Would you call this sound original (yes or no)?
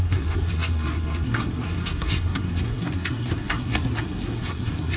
no